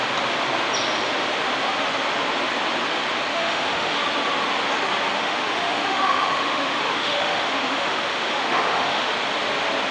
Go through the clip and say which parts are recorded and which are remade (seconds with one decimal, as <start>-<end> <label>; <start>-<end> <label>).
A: 0.0-3.3 recorded; 3.3-4.0 remade; 4.0-5.2 recorded; 5.2-9.1 remade; 9.1-9.9 recorded